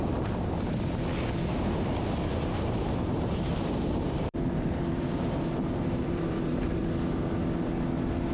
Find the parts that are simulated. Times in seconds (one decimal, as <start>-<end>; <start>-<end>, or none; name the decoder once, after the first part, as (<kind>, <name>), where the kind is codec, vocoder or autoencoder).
2.3-6.8 (vocoder, BigVGAN v2)